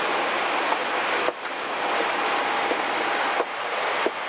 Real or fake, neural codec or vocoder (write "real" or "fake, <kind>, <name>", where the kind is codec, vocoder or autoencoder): real